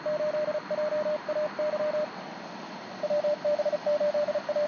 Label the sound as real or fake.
real